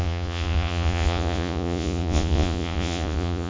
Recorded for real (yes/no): no